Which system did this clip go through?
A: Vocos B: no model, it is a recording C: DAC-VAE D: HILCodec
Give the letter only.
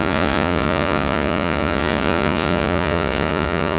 A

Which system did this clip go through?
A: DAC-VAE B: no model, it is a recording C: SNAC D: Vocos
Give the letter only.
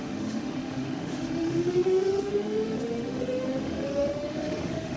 A